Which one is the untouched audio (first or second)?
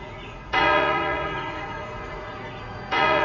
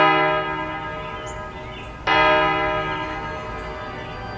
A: second